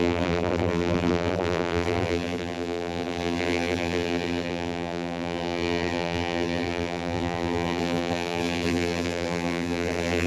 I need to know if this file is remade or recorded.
remade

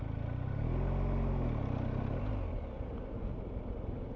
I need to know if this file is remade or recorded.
recorded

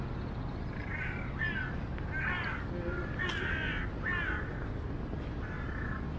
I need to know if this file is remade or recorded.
recorded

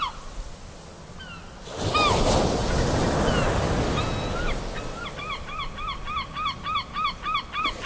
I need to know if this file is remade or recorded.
recorded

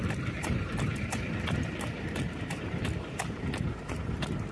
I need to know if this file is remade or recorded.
remade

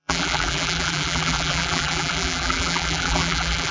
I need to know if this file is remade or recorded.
remade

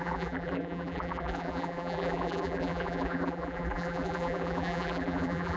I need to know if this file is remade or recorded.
remade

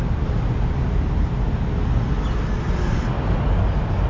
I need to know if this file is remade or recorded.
recorded